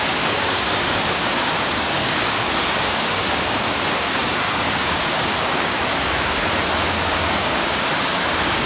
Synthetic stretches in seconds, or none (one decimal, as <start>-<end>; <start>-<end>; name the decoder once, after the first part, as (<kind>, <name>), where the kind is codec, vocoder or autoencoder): 0.0-5.7 (codec, DAC); 6.9-8.7

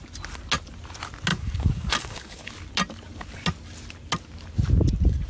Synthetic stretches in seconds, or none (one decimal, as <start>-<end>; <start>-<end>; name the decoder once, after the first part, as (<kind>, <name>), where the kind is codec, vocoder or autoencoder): 1.3-2.5 (codec, DAC)

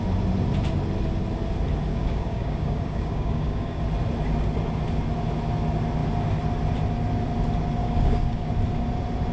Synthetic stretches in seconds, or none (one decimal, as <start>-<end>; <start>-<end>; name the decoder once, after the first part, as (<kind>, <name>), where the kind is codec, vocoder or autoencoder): 1.9-3.8 (codec, DAC); 7.8-8.5

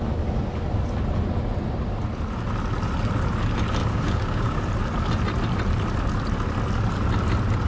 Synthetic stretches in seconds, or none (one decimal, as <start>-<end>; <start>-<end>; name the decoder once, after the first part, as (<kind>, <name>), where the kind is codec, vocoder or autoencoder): 3.8-4.6 (codec, DAC)

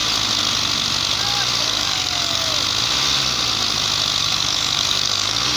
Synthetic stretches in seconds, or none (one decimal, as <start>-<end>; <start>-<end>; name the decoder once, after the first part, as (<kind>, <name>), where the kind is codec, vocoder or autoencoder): 1.6-2.5 (codec, DAC); 4.2-5.6

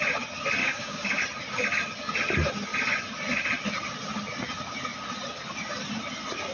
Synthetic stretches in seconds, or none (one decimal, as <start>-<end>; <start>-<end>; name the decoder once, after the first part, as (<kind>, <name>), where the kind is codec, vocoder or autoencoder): 0.6-1.2 (codec, DAC)

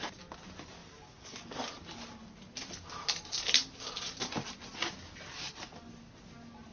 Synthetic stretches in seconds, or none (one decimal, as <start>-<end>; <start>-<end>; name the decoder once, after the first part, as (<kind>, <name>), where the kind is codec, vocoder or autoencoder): 0.8-1.7 (codec, DAC)

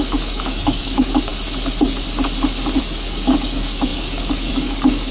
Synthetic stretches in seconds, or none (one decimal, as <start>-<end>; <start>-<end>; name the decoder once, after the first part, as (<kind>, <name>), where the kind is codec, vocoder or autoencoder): 0.0-1.3 (codec, DAC); 2.8-5.1